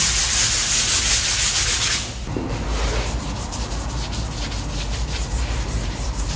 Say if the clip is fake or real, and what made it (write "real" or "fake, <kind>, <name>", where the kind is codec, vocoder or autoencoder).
real